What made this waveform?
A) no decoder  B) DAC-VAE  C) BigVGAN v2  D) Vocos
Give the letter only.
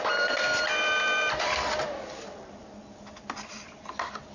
C